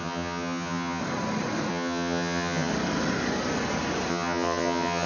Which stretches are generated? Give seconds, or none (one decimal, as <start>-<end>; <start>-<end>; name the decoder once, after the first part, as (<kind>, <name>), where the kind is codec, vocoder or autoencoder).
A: 0.0-1.0 (vocoder, HiFi-GAN); 1.7-2.7; 4.1-5.1